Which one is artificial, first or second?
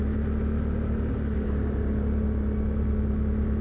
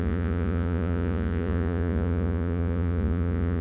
second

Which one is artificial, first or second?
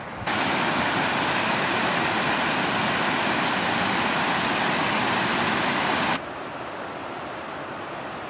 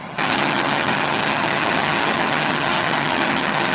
second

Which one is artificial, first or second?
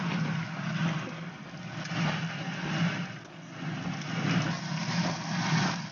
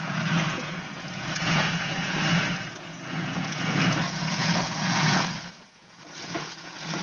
second